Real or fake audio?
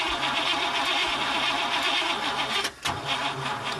real